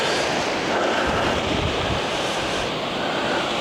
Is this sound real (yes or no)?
yes